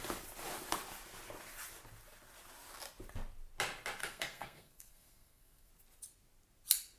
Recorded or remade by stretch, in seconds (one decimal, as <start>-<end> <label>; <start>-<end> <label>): 0.0-4.0 recorded; 4.0-5.7 remade; 5.7-7.0 recorded